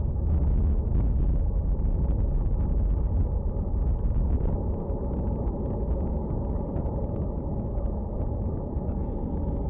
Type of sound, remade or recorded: recorded